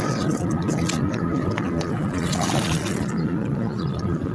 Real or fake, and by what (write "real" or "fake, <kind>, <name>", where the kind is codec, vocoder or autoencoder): fake, vocoder, Vocos